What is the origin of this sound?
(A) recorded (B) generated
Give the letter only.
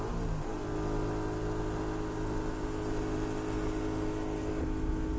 A